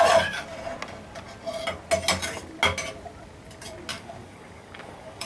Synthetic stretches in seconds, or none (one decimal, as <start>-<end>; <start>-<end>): 3.9-5.3